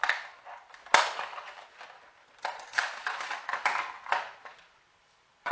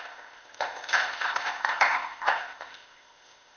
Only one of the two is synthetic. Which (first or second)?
second